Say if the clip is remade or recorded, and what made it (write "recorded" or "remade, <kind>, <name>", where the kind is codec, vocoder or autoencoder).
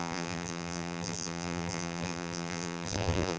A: remade, vocoder, BigVGAN v2